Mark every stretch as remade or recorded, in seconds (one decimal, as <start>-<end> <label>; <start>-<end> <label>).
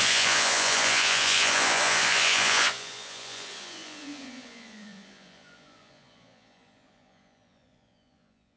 0.0-8.6 remade